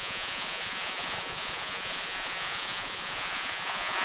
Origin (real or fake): fake